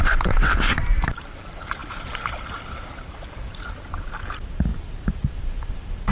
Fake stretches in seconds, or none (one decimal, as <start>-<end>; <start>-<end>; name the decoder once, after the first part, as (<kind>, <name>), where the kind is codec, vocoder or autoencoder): 0.0-4.7 (vocoder, BigVGAN v2); 5.4-6.1